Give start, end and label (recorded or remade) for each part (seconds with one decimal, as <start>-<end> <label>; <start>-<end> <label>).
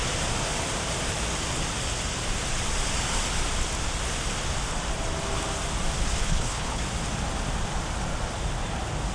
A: 0.0-6.2 recorded; 6.2-6.8 remade; 6.8-9.1 recorded